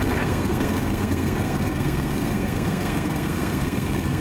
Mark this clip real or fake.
fake